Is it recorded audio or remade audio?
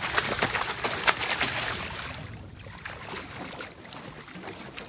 recorded